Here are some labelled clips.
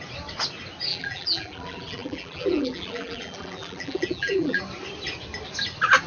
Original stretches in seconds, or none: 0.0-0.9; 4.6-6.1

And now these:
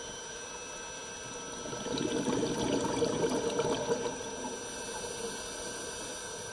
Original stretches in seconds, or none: 0.0-6.5

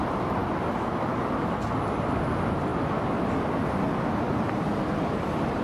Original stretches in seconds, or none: 0.0-5.6

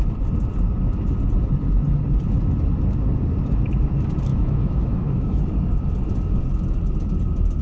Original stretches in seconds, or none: 0.0-4.3; 5.4-7.6

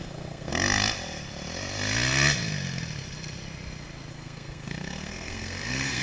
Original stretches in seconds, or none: 0.5-4.1

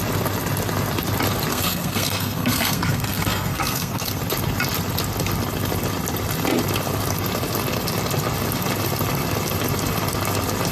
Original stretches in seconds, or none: 0.0-1.5; 4.2-10.7

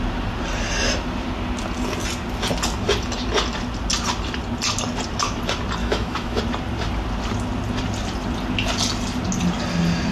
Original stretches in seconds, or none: 0.0-5.8; 6.4-10.1